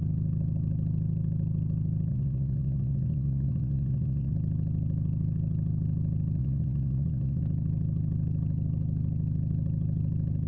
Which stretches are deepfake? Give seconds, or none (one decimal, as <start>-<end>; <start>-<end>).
2.1-4.3; 6.4-7.4